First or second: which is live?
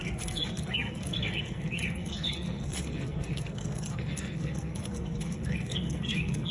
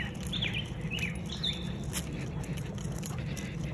second